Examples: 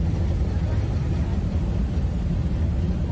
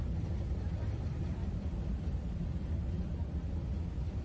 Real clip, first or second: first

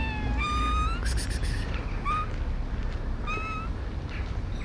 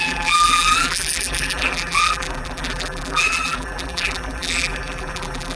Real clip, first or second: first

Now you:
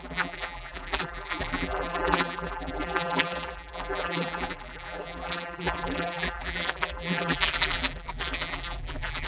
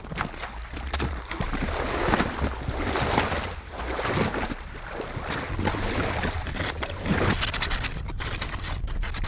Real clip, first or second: second